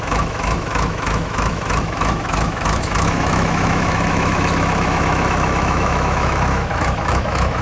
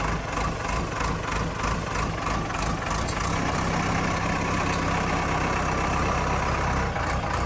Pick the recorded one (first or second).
second